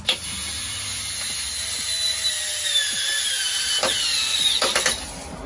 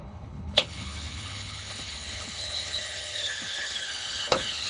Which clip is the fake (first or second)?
second